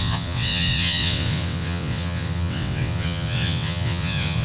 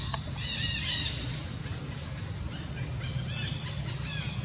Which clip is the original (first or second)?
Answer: second